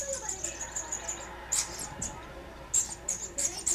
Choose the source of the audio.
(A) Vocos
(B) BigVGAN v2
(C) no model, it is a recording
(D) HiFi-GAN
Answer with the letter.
C